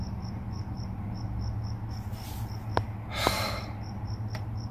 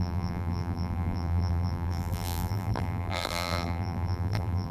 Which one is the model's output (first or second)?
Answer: second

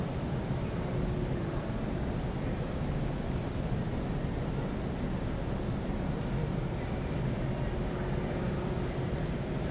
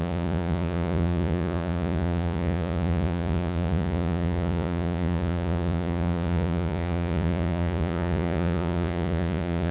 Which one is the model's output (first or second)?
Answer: second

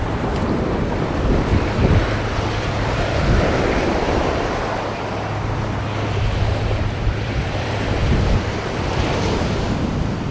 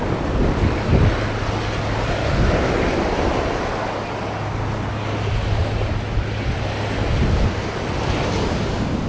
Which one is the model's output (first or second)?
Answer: first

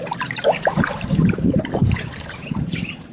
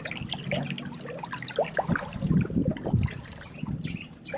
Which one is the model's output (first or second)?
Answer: first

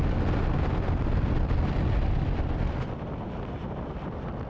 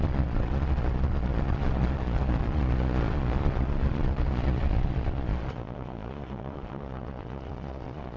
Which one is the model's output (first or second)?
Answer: second